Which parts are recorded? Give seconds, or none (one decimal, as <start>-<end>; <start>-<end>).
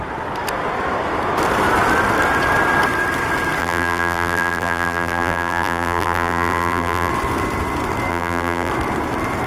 0.0-3.6; 7.1-8.1; 8.7-9.5